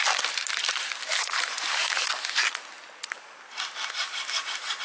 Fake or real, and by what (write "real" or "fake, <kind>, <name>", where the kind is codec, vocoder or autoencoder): real